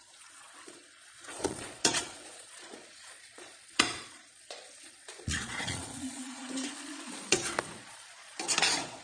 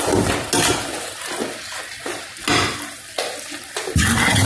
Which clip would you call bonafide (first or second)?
second